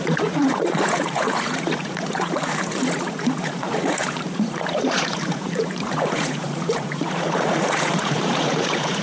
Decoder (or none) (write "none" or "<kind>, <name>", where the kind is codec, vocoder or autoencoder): vocoder, Vocos